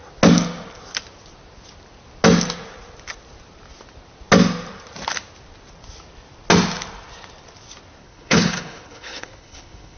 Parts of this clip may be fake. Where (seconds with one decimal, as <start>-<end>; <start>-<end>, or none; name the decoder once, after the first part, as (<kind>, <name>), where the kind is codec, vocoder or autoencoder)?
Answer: 8.0-10.0 (codec, HILCodec)